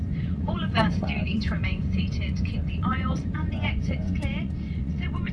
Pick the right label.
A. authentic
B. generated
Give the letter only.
B